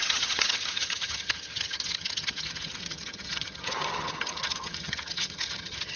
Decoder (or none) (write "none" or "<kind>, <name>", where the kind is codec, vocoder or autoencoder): vocoder, HiFi-GAN